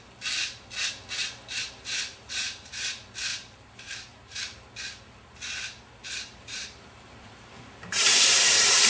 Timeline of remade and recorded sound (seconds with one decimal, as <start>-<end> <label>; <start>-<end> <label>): 0.0-1.2 recorded; 1.2-2.9 remade; 2.9-3.3 recorded; 3.3-4.4 remade; 4.4-6.0 recorded; 6.0-8.9 remade